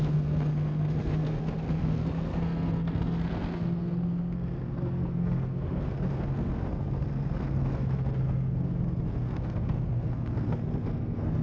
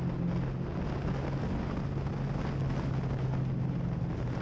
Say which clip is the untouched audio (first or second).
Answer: second